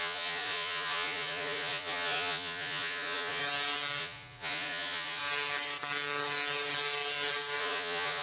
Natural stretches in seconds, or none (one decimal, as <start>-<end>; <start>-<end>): 3.4-4.0; 5.2-7.6